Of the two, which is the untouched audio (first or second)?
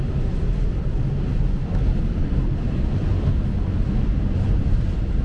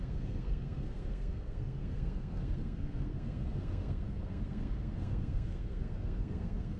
first